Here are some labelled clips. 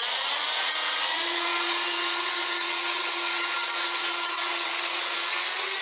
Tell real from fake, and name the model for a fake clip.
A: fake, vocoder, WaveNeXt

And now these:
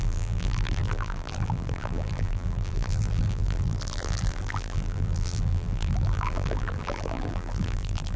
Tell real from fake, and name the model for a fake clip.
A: fake, vocoder, BigVGAN v2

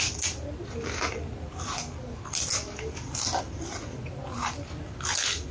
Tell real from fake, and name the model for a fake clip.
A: real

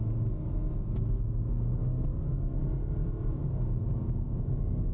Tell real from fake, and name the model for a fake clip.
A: real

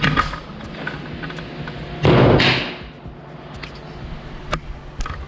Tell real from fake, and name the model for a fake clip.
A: real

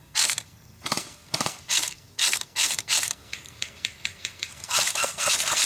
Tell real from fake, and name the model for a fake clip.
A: fake, codec, SNAC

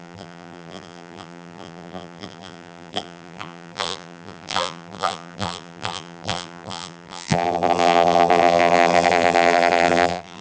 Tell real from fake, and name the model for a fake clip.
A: fake, vocoder, BigVGAN v2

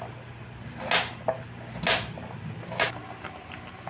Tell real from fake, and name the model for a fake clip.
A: real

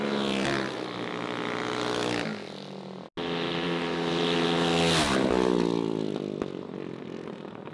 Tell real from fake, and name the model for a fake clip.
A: real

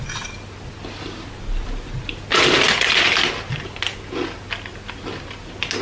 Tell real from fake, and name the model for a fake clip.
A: real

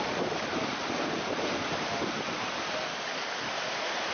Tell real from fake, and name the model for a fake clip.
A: real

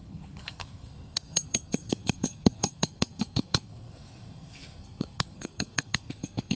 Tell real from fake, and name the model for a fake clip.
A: fake, codec, SNAC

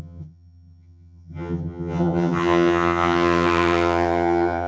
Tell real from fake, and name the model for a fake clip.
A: fake, vocoder, HiFi-GAN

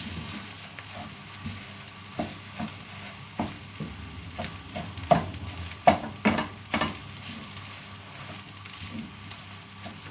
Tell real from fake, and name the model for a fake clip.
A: real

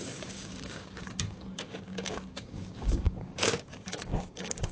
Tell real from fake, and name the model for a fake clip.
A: fake, codec, DAC